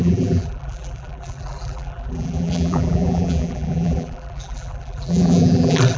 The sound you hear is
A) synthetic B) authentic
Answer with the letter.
A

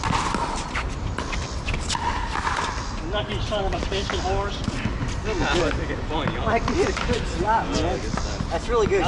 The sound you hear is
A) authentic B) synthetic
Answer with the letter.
A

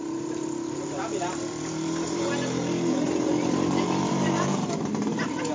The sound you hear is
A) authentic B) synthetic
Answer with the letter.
B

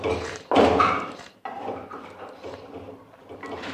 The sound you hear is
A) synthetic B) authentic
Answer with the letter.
A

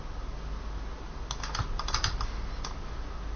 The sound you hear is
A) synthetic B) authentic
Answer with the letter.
B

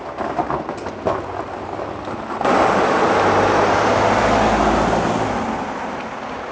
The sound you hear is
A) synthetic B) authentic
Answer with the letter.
B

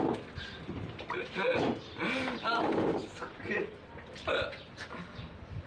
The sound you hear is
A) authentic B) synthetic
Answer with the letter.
B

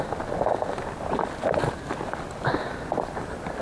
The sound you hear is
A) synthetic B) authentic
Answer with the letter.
B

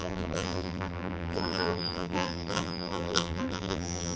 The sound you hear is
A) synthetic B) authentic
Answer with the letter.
A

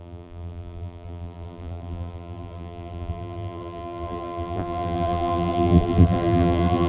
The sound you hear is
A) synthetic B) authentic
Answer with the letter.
A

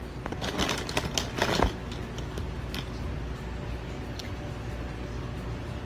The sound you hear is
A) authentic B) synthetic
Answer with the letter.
A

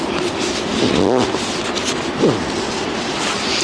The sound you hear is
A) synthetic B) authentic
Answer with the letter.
B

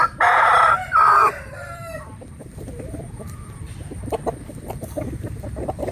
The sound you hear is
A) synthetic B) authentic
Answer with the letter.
A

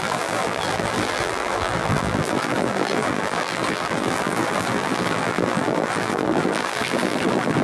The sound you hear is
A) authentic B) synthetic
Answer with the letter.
B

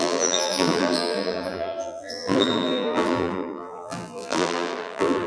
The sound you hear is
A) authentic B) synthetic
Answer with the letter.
B